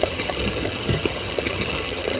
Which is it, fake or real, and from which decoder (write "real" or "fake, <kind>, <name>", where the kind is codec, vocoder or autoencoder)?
fake, vocoder, HiFi-GAN